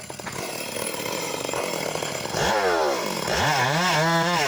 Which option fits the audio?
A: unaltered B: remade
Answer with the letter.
A